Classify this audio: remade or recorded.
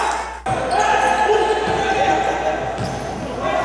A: recorded